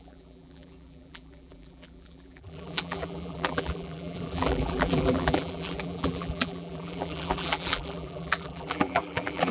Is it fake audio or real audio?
fake